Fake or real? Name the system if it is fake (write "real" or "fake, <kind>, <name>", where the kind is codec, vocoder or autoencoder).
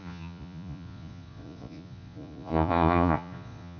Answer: fake, vocoder, Vocos